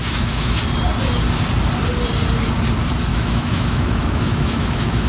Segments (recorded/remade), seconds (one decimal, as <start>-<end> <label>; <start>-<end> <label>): 0.0-0.6 remade; 0.6-3.1 recorded; 3.1-5.1 remade